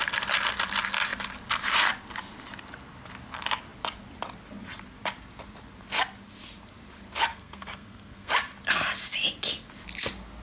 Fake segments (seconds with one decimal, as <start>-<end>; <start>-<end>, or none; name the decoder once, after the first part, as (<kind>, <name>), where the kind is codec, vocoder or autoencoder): 7.3-8.3 (codec, SNAC)